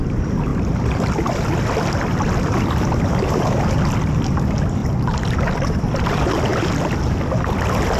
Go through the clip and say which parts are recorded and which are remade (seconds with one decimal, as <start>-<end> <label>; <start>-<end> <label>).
0.0-8.0 recorded